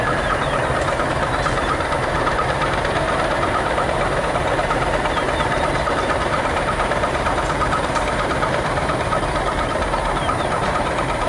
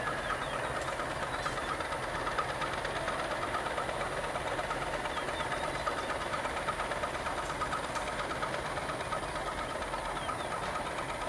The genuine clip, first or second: second